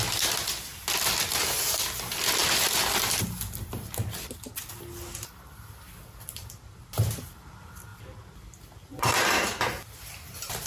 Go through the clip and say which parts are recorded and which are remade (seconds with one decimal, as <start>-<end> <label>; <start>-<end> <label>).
0.0-10.7 recorded